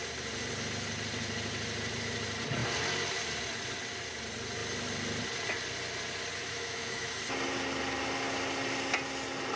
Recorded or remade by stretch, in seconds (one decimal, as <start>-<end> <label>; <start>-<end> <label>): 0.0-6.4 recorded; 6.4-7.1 remade; 7.1-9.6 recorded